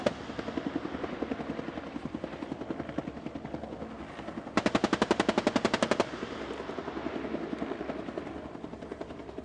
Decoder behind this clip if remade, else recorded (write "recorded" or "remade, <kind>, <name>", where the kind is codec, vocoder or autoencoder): recorded